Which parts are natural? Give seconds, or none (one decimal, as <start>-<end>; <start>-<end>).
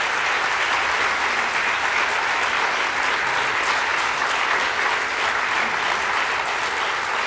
0.0-7.3